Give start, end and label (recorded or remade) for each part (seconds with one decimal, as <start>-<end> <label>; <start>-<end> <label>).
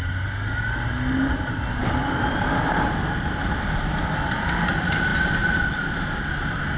0.0-1.8 recorded; 1.8-2.3 remade; 2.3-6.8 recorded